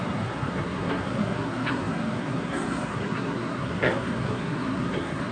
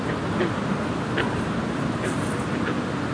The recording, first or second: second